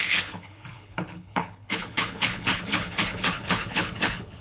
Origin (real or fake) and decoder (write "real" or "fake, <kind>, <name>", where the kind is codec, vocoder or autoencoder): fake, codec, HILCodec